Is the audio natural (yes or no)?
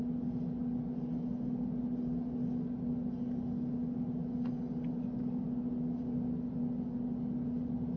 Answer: yes